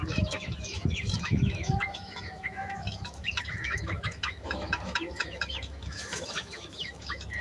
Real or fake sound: fake